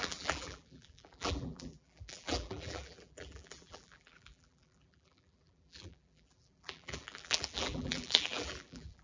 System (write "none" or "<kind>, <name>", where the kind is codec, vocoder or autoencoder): vocoder, BigVGAN v2